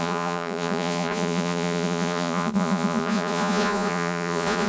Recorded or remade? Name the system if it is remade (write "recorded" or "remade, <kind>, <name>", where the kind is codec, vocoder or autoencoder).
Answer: remade, vocoder, Vocos